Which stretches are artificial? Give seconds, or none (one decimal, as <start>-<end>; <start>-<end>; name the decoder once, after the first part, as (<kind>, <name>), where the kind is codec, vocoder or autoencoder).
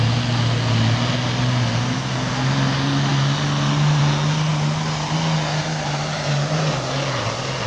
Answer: none